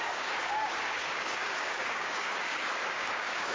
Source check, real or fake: fake